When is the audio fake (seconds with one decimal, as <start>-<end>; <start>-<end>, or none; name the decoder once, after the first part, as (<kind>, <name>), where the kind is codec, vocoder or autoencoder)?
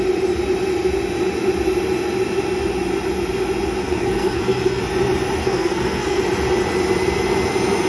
3.8-4.8 (codec, SNAC); 5.4-6.2